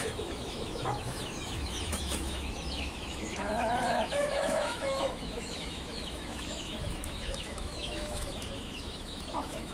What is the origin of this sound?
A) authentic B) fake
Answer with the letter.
B